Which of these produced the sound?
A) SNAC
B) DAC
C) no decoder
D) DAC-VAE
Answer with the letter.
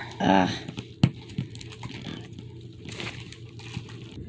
C